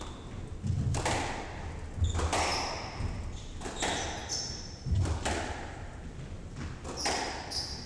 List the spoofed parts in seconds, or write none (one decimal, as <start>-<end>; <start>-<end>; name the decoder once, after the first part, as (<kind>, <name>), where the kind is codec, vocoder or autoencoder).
none